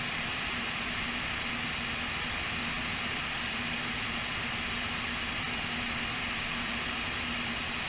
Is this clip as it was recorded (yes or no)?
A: yes